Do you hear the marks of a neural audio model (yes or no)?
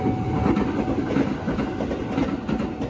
no